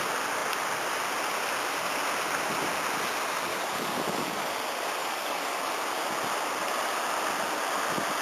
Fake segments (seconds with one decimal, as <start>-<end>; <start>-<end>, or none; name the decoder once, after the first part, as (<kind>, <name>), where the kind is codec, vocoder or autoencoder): 3.5-4.5 (codec, DAC); 5.0-5.7